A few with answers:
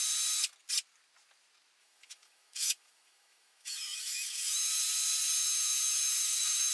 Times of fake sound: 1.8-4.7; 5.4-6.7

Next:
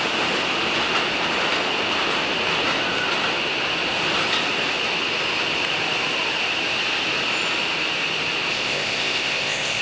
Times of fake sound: 8.5-9.8